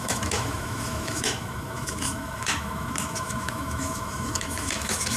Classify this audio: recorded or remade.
remade